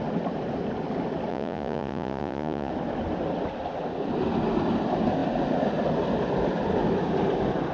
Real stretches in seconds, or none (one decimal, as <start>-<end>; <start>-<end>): 0.0-1.3; 2.7-7.7